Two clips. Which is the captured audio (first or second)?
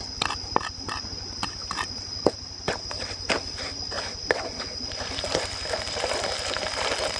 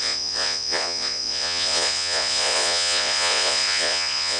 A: first